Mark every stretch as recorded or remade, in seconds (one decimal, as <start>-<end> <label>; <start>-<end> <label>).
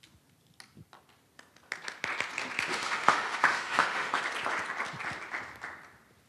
0.0-2.7 recorded; 2.7-4.2 remade; 4.2-6.3 recorded